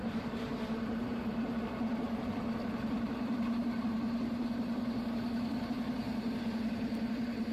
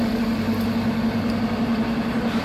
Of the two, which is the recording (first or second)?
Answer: second